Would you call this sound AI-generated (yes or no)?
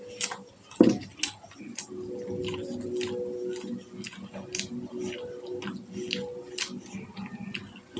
no